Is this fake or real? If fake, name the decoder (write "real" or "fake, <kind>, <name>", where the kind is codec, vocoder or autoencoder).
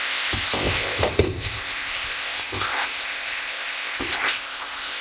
fake, codec, ZipCodec